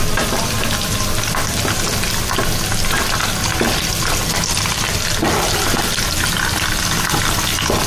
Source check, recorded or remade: recorded